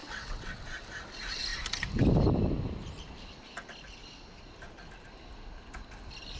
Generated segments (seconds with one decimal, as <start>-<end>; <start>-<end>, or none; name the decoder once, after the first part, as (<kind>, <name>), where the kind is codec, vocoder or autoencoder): 0.0-0.6 (vocoder, WaveNeXt)